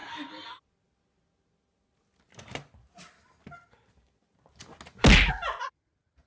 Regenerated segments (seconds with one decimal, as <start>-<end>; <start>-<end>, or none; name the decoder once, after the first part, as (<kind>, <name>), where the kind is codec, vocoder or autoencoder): none